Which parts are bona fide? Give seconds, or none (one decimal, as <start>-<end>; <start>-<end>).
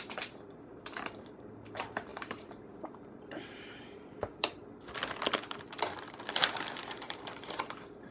4.6-7.0